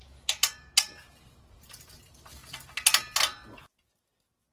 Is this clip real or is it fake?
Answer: real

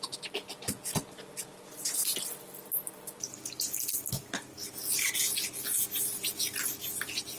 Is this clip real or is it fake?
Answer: real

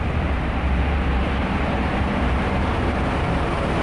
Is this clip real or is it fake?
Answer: fake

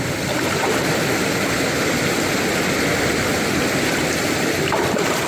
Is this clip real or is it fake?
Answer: real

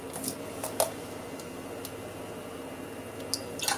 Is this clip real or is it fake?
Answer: real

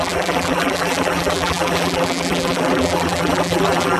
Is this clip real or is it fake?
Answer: fake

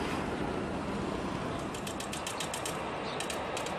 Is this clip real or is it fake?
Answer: real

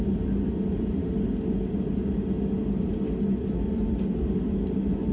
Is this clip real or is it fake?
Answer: real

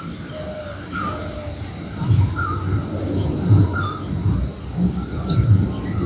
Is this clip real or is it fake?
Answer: real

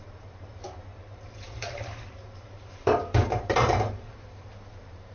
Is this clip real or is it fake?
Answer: fake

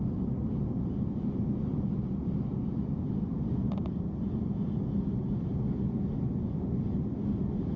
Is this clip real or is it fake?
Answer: real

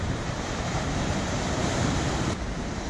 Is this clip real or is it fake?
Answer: fake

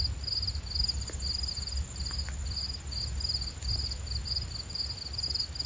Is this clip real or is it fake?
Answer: real